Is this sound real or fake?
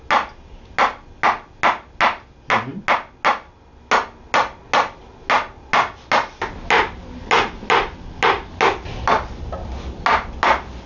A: real